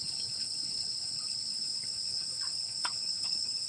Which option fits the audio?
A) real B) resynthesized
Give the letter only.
B